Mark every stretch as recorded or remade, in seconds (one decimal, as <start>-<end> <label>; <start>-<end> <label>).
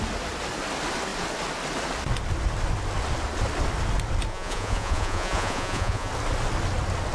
0.0-4.3 recorded; 4.3-6.1 remade; 6.1-7.1 recorded